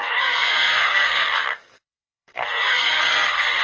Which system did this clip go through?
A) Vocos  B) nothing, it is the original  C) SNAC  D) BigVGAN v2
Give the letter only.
C